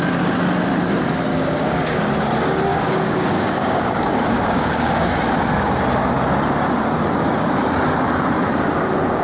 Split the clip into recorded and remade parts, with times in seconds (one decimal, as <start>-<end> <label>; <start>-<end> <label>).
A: 0.0-1.3 recorded; 1.3-2.0 remade; 2.0-2.7 recorded; 2.7-5.1 remade; 5.1-9.2 recorded